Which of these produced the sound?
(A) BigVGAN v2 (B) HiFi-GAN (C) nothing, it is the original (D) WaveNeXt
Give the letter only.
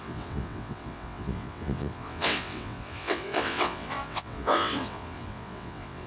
D